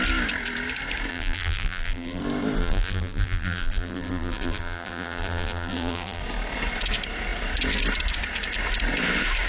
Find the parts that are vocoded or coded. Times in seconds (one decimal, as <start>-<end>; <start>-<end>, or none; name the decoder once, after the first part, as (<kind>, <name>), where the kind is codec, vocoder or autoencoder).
1.1-2.2 (vocoder, BigVGAN v2); 2.6-6.2